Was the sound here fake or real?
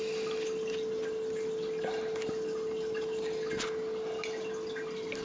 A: real